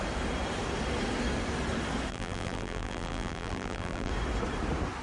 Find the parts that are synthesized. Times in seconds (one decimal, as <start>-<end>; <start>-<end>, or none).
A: 2.1-4.1